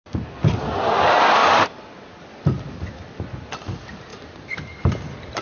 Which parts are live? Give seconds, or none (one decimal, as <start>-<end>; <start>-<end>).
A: 0.0-4.1